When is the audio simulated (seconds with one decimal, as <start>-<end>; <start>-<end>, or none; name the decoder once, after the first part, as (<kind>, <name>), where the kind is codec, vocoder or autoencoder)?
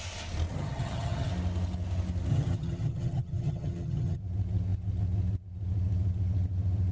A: 0.5-1.3 (vocoder, HiFi-GAN); 2.3-4.2